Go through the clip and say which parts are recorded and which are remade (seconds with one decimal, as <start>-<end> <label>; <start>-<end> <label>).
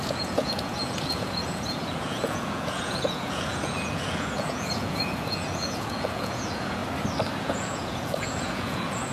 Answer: 0.0-6.8 remade; 6.8-7.4 recorded; 7.4-9.1 remade